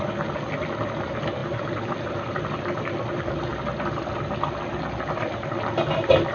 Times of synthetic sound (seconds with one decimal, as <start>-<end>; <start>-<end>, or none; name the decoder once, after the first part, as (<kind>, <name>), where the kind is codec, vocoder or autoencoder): none